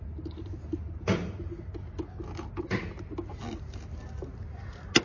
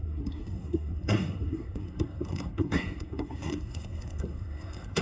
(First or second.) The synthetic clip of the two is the second